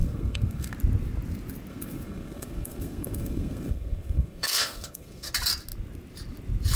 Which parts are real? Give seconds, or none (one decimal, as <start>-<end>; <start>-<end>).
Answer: 0.7-1.7; 5.3-6.8

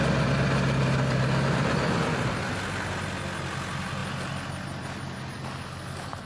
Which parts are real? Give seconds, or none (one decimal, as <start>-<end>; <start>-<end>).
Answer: 0.0-6.3

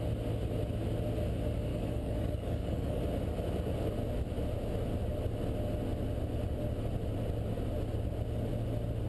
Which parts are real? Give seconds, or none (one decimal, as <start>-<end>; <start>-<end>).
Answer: 0.0-1.7; 3.0-9.1

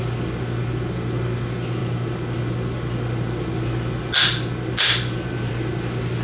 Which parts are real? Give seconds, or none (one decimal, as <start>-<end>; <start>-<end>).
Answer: 0.0-6.2

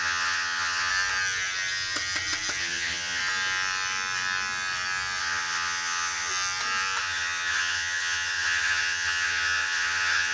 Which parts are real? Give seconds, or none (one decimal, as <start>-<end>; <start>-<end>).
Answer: 0.9-2.6; 3.2-5.2; 6.3-7.0